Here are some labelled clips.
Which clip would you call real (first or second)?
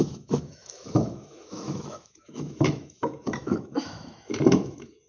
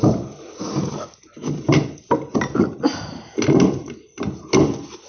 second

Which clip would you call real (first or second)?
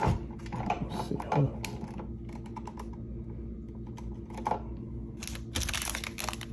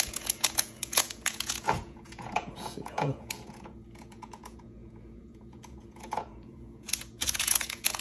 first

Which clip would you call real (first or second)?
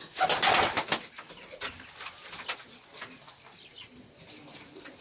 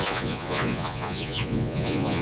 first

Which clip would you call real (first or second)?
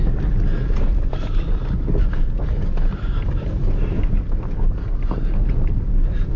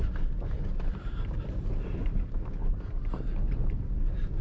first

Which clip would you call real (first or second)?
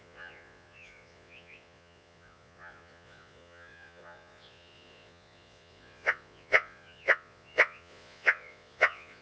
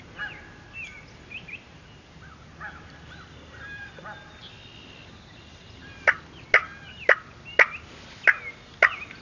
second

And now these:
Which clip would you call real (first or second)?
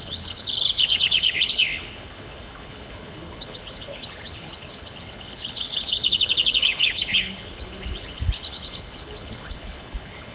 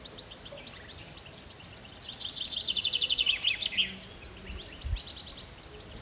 second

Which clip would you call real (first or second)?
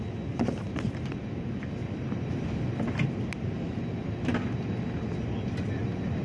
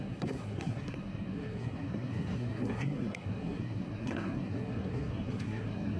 first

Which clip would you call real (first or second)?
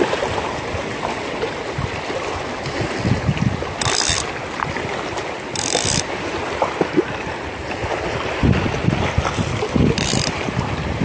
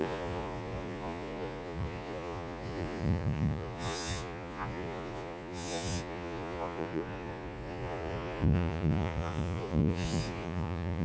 first